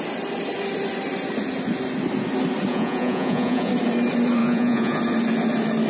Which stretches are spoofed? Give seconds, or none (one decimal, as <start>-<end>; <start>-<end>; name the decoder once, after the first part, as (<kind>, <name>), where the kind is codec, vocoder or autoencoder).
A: 2.7-3.7 (vocoder, Vocos); 4.4-5.0